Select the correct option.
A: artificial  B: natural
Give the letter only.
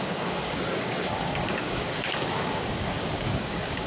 A